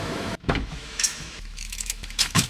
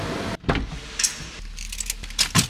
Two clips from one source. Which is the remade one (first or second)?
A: first